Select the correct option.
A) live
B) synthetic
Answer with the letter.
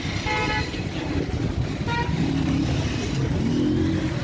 A